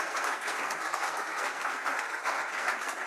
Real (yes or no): no